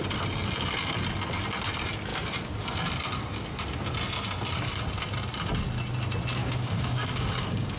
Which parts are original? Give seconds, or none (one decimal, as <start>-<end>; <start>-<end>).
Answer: 0.0-6.4